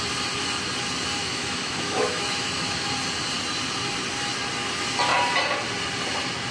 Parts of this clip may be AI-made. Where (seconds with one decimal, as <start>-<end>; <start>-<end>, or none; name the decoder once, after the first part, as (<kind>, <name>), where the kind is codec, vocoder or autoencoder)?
1.2-2.9 (autoencoder, DAC-VAE)